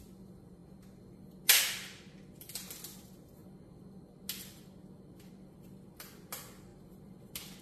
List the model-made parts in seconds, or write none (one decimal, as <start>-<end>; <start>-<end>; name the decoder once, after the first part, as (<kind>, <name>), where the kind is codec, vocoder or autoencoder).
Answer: none